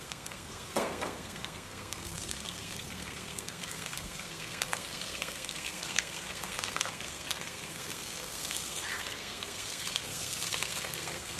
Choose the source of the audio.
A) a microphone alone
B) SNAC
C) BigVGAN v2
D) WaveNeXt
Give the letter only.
B